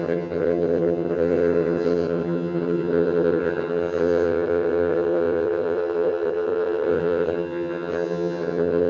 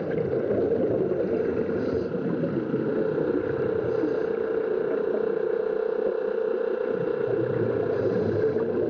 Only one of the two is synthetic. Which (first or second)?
first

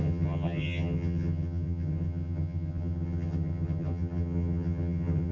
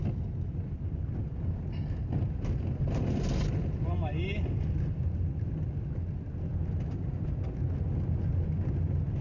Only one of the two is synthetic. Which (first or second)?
first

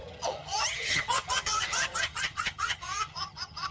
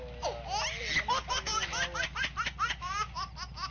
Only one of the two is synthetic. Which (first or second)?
first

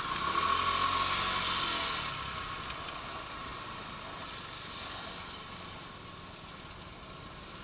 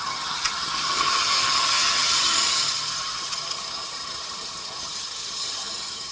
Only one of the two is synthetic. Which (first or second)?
second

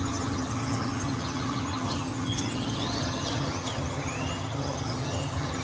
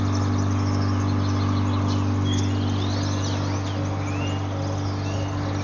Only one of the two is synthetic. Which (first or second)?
first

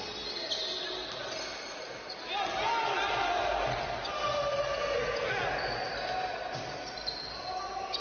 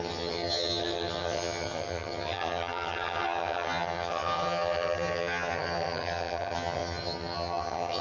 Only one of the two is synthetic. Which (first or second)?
second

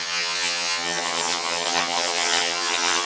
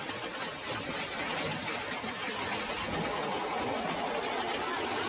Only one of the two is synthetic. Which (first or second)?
first